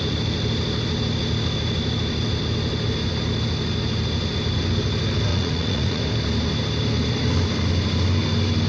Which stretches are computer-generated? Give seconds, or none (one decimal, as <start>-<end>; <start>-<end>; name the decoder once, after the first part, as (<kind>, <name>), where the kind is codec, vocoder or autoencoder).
5.3-6.0 (vocoder, Vocos)